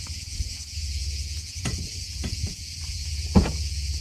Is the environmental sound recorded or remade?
remade